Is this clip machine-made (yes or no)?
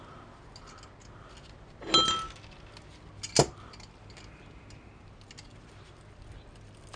no